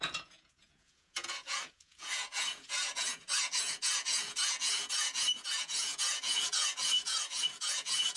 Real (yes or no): no